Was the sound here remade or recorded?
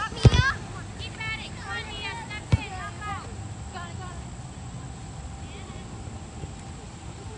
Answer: recorded